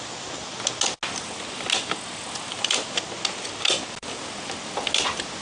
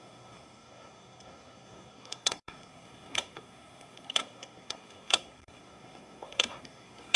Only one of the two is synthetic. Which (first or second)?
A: second